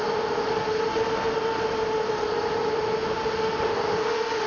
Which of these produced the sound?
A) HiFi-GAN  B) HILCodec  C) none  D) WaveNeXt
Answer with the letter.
C